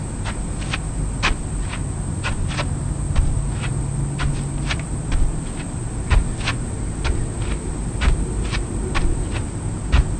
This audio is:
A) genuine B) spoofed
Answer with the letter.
A